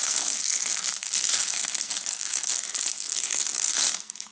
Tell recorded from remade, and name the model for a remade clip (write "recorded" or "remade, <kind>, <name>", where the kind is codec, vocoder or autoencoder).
remade, codec, SNAC